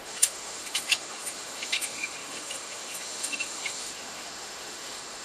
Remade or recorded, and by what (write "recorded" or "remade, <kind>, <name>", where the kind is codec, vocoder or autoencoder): remade, autoencoder, DAC-VAE